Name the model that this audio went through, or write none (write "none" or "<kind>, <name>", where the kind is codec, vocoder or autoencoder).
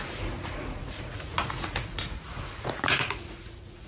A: vocoder, Vocos